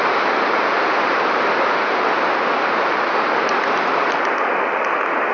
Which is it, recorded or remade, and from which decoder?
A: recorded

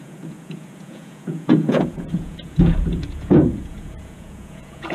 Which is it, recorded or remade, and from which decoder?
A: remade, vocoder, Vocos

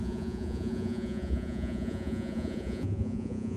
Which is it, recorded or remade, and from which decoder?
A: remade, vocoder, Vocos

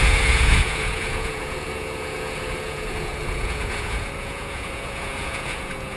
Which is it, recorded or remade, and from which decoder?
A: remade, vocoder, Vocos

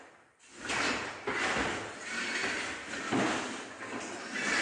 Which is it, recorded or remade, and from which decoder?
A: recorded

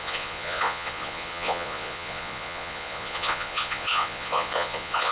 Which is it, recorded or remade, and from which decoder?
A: remade, vocoder, Vocos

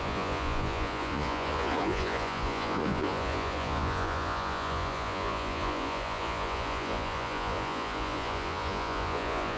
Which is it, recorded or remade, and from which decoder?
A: remade, vocoder, Vocos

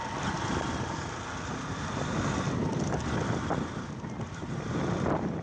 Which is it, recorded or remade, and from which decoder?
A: recorded